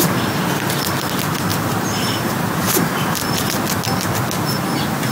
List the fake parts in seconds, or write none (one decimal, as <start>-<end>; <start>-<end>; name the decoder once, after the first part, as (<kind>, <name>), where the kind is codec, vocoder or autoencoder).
1.5-3.3 (vocoder, BigVGAN v2)